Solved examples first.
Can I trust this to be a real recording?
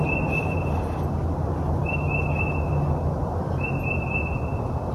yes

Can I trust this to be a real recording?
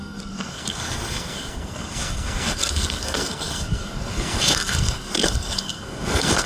no